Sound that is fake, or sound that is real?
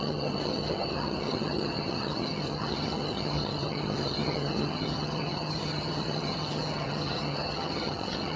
fake